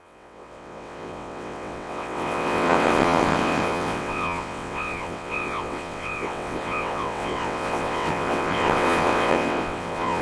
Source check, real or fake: fake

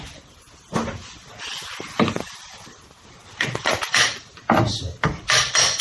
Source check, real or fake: real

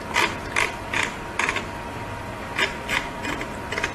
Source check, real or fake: real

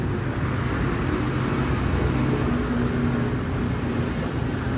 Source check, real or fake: real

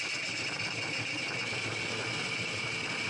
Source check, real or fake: real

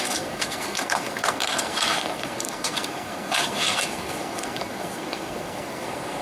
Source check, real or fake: fake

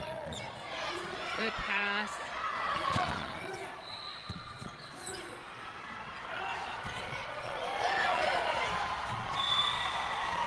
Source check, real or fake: fake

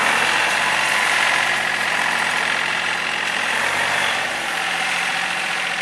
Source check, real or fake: fake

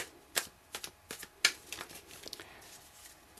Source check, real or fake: real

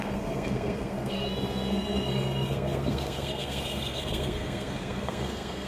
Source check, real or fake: fake